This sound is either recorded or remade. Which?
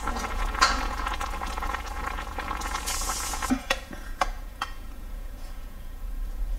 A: remade